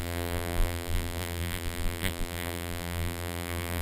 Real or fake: fake